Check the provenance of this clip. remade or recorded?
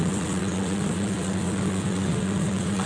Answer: remade